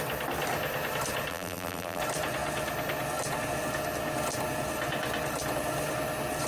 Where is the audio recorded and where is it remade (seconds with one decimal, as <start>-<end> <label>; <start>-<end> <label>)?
0.0-1.3 recorded; 1.3-2.0 remade; 2.0-6.5 recorded